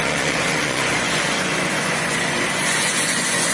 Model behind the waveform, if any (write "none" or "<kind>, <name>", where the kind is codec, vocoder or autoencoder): vocoder, Vocos